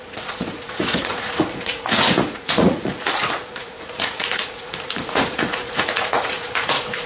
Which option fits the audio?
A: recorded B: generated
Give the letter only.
B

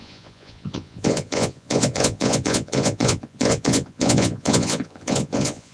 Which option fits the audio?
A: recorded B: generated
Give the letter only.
B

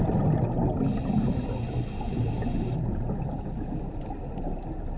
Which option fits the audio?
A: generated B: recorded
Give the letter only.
B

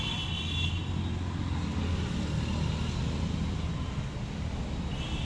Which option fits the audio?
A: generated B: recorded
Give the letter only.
B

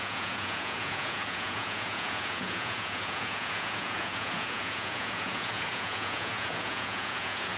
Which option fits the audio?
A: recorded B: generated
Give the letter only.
B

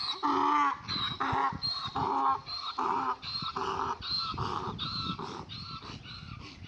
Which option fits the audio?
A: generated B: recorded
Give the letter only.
B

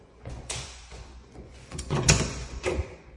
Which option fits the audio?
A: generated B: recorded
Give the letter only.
A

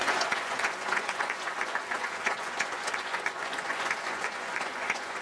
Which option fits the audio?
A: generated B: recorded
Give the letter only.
A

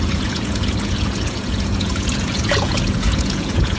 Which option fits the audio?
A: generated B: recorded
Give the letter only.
A